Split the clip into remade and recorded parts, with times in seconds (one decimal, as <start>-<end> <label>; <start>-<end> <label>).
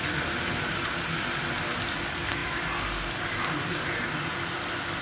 0.0-5.0 recorded